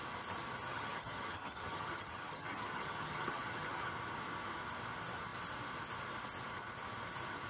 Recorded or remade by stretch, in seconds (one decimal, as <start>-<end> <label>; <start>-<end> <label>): 0.0-0.7 recorded; 0.7-3.9 remade; 3.9-7.5 recorded